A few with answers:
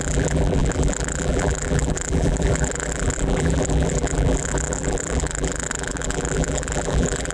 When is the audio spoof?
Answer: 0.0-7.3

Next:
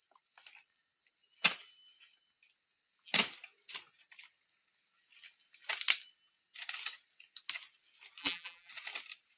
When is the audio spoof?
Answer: 8.2-8.7

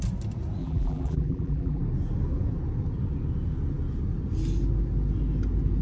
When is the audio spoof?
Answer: 0.6-1.8

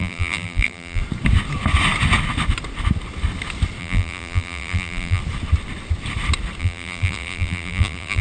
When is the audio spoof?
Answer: 0.0-1.0; 3.8-5.2; 6.6-8.2